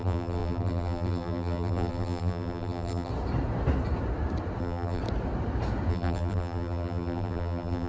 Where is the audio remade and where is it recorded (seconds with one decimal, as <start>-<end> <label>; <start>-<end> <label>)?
0.0-3.1 remade; 3.1-4.6 recorded; 4.6-5.0 remade; 5.0-5.9 recorded; 5.9-7.9 remade